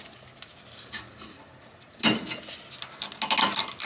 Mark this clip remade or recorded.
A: recorded